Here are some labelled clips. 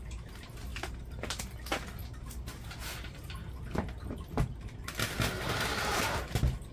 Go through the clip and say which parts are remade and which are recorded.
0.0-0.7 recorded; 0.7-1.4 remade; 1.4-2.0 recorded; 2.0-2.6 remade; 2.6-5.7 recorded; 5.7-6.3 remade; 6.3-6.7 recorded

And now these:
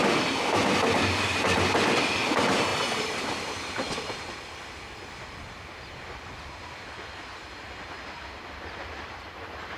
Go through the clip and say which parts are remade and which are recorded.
0.0-2.7 recorded; 2.7-5.4 remade; 5.4-9.8 recorded

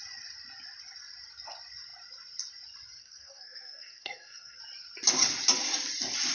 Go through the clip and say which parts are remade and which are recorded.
0.0-3.0 recorded; 3.0-4.6 remade; 4.6-6.3 recorded

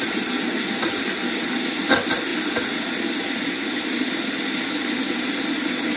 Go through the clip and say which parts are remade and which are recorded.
0.0-6.0 recorded

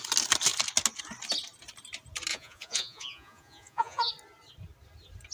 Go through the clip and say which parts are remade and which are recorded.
0.0-2.3 recorded; 2.3-4.1 remade; 4.1-5.3 recorded

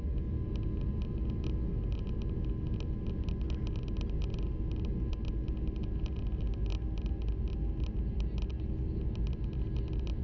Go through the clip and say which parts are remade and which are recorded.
0.0-10.2 recorded

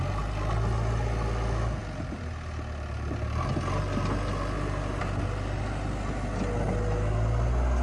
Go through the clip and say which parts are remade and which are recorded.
0.0-7.8 recorded